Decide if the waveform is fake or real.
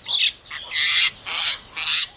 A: real